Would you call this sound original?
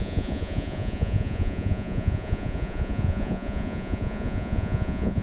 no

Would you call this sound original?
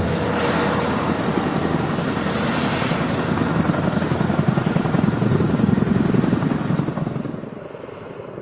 yes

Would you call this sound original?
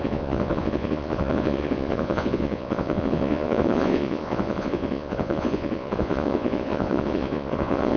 no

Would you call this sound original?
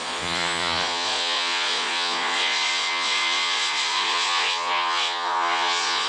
no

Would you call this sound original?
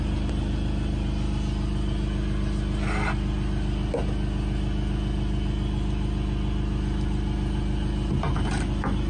yes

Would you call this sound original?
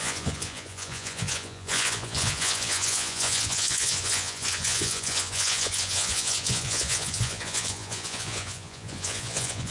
no